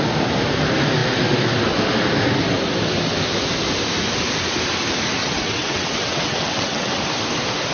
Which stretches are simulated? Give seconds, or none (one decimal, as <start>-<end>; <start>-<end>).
5.2-7.0